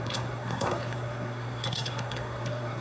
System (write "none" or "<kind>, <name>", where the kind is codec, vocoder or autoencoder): codec, SNAC